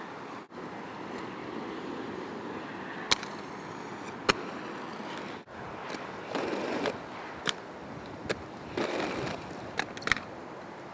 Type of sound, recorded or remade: recorded